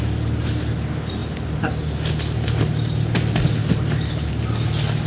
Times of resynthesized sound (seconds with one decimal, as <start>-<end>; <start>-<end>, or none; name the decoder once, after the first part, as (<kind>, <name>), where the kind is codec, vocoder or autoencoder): none